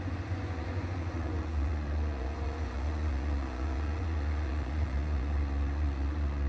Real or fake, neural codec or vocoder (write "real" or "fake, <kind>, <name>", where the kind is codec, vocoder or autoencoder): fake, vocoder, Vocos